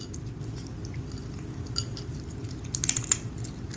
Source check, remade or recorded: recorded